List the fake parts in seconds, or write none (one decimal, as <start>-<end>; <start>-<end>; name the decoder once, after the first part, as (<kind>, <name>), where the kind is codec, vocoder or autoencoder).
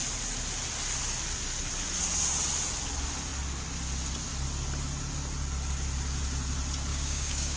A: 6.9-7.6 (codec, DAC)